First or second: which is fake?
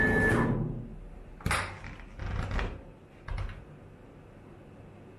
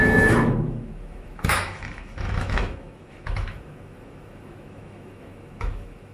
second